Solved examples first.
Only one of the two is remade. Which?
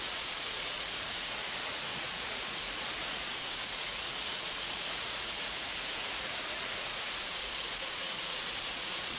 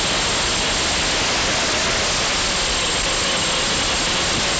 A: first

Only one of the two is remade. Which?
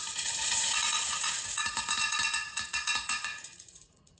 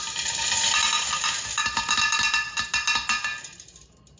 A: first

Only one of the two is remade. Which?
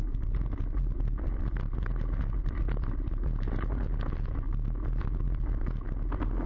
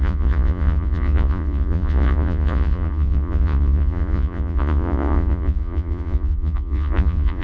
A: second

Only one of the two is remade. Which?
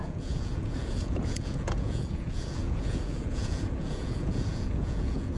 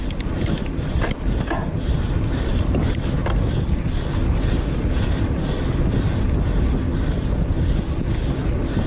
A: first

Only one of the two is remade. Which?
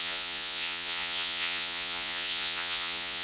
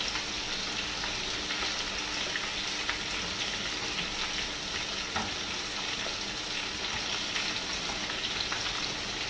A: first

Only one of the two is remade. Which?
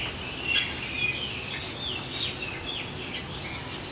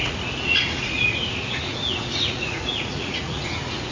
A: second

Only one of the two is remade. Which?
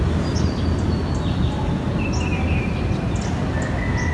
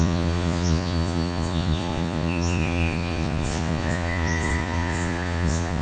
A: second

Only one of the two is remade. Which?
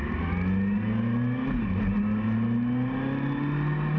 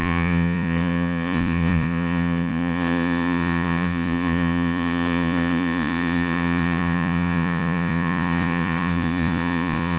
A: second